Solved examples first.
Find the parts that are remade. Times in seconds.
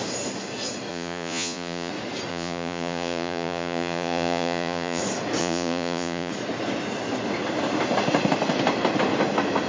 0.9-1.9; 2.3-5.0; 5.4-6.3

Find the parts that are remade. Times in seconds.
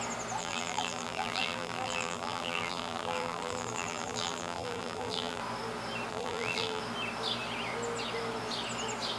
0.4-5.4; 6.1-6.8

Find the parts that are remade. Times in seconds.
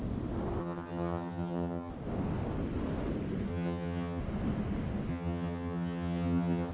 0.6-1.9; 3.5-4.2; 5.1-6.7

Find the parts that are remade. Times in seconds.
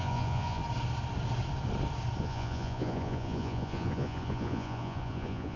0.0-0.6; 2.2-5.6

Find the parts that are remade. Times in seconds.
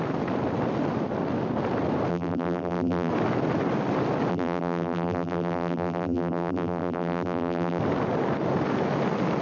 2.1-3.1; 4.3-7.8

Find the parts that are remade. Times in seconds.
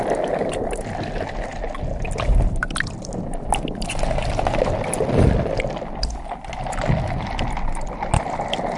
none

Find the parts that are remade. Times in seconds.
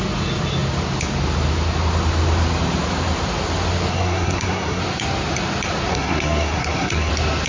3.9-4.8; 5.9-7.1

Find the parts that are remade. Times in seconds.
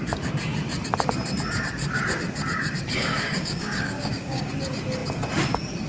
3.0-4.5